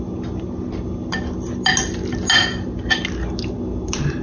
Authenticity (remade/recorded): recorded